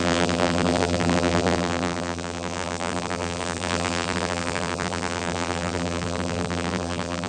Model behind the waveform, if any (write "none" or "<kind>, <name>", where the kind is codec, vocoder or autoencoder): vocoder, BigVGAN v2